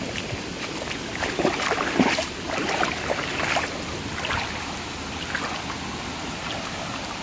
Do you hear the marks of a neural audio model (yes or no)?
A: no